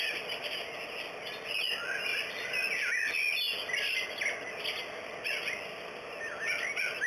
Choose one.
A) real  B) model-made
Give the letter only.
A